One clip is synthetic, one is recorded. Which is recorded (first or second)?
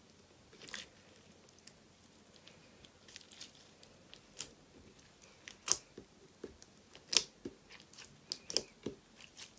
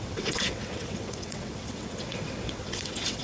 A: first